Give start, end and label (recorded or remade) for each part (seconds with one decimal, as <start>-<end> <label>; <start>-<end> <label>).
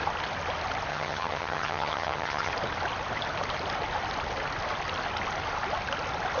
0.0-0.9 recorded; 0.9-2.5 remade; 2.5-6.4 recorded